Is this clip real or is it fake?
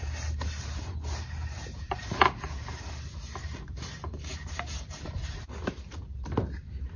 fake